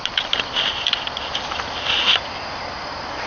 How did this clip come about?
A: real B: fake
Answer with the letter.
A